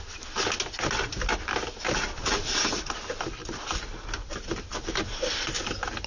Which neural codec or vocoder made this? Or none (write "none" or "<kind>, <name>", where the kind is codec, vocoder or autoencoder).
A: none